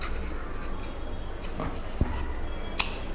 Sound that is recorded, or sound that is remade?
recorded